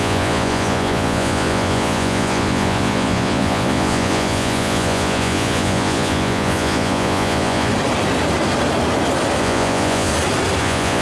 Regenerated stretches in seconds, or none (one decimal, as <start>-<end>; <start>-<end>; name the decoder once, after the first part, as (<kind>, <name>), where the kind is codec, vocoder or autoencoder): 0.0-7.7 (vocoder, Vocos); 9.4-10.1; 10.6-11.0